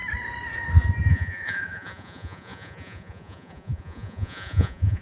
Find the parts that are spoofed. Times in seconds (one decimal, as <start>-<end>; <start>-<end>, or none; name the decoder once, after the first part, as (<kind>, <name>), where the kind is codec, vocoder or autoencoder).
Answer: 1.1-5.0 (vocoder, Vocos)